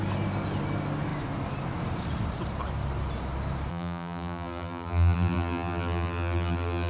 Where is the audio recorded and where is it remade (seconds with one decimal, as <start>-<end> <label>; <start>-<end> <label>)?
0.0-3.7 recorded; 3.7-6.9 remade